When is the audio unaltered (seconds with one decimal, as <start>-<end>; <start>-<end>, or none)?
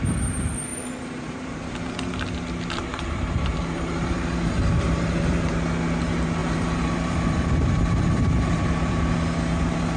0.0-2.9; 5.5-6.4; 8.6-10.0